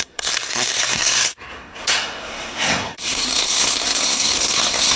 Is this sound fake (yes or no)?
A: yes